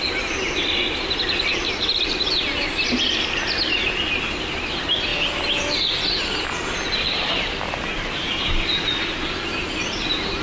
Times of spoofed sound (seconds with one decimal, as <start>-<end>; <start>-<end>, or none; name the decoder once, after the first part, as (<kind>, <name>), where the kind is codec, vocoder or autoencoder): none